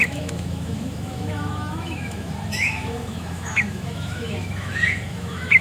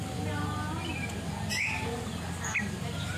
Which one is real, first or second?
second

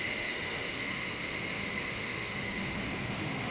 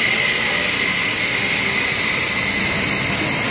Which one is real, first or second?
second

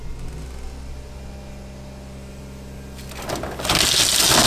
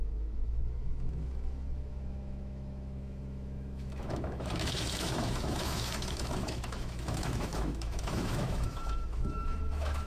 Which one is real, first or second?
first